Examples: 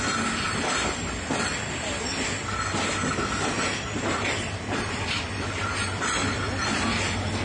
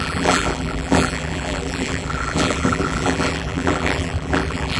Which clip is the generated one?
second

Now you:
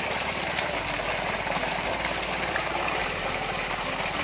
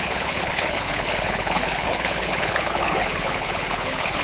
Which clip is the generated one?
second